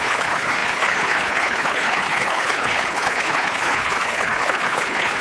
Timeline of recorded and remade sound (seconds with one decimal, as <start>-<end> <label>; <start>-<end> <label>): 0.0-5.2 remade